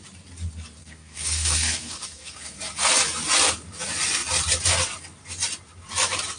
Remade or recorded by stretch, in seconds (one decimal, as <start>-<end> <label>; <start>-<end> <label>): 0.0-0.8 recorded; 0.8-2.6 remade; 2.6-6.4 recorded